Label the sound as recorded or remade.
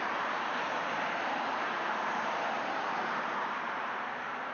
remade